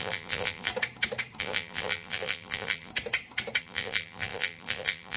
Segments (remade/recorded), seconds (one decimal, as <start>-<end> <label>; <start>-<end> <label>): 0.0-0.7 remade; 0.7-1.4 recorded; 1.4-2.9 remade; 2.9-3.6 recorded; 3.6-5.2 remade